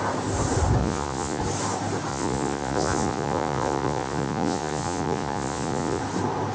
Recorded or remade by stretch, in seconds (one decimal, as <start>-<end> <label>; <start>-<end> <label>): 0.0-0.8 recorded; 0.8-1.4 remade; 1.4-2.1 recorded; 2.1-6.0 remade; 6.0-6.5 recorded